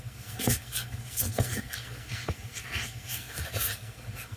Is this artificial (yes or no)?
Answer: yes